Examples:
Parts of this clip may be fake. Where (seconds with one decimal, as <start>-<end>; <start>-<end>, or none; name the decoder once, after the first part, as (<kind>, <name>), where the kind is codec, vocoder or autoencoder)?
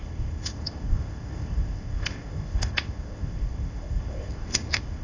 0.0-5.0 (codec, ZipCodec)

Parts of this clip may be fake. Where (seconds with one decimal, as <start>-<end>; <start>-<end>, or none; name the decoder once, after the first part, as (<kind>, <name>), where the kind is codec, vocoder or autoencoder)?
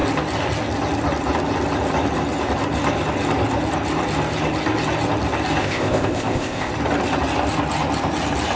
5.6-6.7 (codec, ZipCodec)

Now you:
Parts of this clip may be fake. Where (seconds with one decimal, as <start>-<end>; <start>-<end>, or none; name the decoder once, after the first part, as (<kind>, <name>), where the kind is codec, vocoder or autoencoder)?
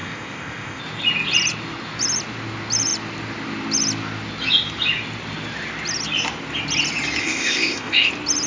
0.0-0.8 (codec, ZipCodec); 7.2-8.1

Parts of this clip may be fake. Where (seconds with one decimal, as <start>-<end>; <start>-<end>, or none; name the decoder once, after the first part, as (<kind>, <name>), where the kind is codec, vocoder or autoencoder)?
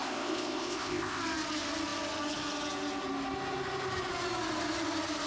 0.0-1.2 (codec, ZipCodec)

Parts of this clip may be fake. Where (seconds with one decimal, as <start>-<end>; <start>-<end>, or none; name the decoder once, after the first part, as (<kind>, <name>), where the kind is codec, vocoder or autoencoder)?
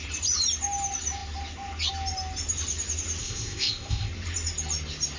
3.2-4.1 (codec, ZipCodec)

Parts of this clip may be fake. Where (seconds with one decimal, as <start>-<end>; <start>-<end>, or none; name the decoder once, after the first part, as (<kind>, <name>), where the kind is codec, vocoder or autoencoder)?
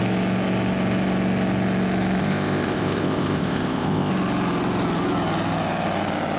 2.2-4.1 (codec, ZipCodec)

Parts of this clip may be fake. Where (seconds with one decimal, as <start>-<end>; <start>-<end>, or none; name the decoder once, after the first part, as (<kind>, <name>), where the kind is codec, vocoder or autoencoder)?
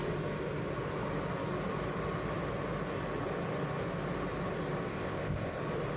4.9-5.6 (codec, ZipCodec)